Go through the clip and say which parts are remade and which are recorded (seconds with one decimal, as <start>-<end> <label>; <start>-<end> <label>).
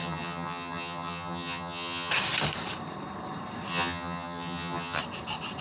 0.0-2.1 remade; 2.1-3.7 recorded; 3.7-5.0 remade; 5.0-5.6 recorded